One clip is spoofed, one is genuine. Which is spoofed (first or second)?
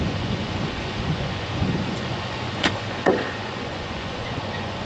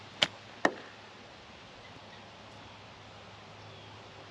first